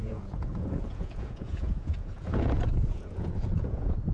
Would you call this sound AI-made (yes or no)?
yes